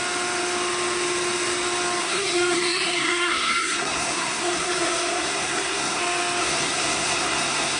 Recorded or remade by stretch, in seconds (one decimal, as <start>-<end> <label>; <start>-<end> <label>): 0.0-2.0 recorded; 2.0-6.0 remade; 6.0-6.4 recorded; 6.4-7.8 remade